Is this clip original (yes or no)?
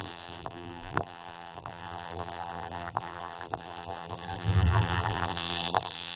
no